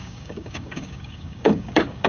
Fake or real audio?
fake